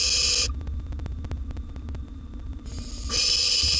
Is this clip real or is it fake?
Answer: real